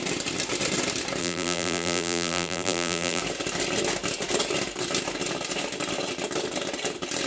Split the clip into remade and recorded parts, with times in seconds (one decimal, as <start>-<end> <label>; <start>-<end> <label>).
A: 0.0-1.2 recorded; 1.2-3.2 remade; 3.2-7.3 recorded